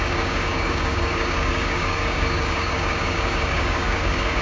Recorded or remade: remade